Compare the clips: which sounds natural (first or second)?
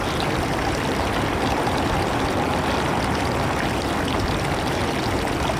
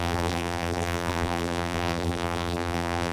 first